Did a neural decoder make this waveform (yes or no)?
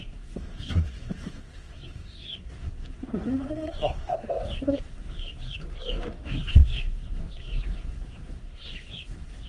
yes